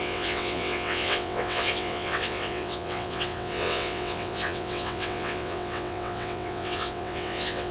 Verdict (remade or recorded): remade